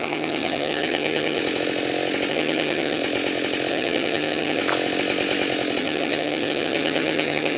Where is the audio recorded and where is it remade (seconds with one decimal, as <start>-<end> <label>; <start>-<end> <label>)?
0.0-1.4 remade; 1.4-2.3 recorded; 2.3-3.0 remade; 3.0-3.7 recorded; 3.7-4.6 remade; 4.6-5.8 recorded; 5.8-7.6 remade